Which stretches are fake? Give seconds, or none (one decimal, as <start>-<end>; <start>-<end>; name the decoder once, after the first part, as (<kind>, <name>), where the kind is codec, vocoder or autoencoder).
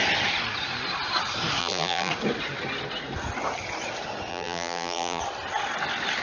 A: 1.6-2.1 (vocoder, BigVGAN v2); 4.3-5.2